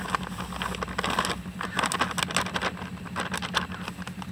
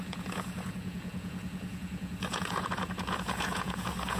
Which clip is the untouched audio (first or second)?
first